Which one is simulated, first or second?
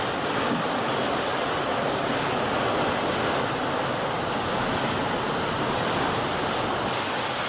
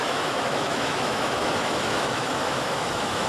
second